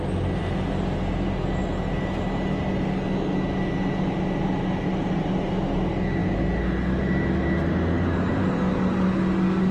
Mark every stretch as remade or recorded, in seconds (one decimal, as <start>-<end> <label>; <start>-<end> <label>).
0.0-9.7 recorded